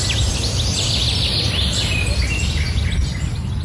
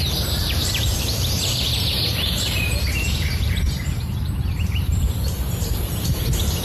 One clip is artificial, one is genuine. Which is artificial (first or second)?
second